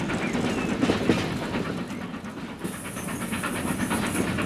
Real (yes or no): yes